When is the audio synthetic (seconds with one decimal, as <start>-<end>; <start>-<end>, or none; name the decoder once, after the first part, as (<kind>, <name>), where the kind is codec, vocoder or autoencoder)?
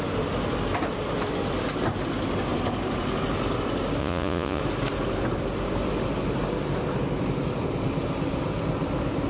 4.0-4.6 (vocoder, Vocos)